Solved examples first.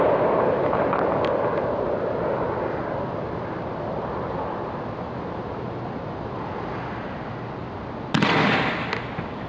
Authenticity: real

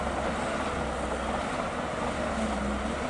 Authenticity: real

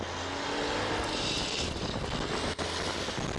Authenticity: real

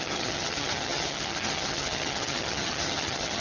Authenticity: fake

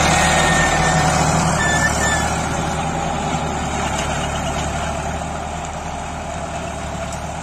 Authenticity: real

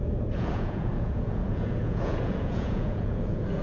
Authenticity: fake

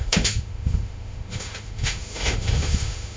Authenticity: fake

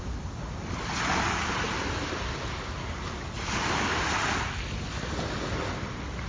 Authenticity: real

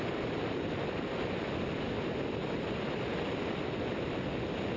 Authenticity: real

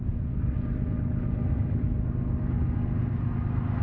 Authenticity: real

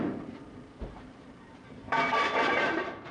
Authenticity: fake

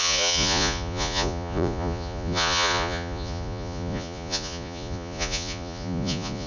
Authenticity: fake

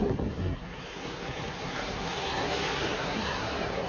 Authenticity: fake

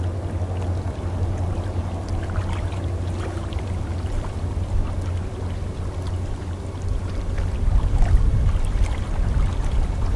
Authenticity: real